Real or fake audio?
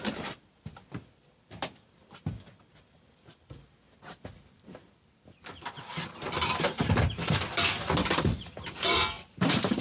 real